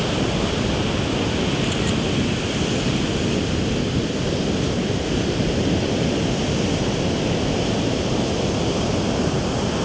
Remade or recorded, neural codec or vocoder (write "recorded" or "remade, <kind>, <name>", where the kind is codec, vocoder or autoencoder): recorded